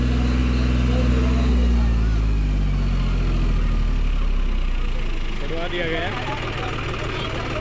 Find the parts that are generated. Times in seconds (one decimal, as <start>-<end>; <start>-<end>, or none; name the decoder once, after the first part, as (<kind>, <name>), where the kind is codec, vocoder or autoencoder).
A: none